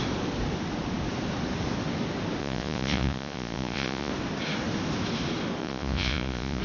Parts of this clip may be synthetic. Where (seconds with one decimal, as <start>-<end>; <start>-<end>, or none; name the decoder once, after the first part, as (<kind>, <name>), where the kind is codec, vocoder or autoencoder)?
2.4-4.1 (vocoder, Vocos); 5.6-6.6